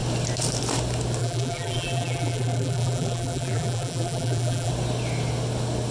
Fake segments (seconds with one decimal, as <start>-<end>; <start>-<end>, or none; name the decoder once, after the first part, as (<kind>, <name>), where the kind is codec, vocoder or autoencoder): 1.2-4.7 (vocoder, BigVGAN v2)